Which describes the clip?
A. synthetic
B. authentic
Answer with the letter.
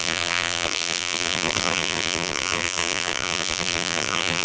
A